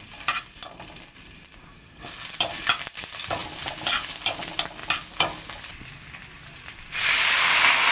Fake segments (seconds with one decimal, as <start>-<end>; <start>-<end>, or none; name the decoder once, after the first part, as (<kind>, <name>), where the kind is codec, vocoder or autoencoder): 0.0-4.8 (vocoder, BigVGAN v2); 5.6-7.9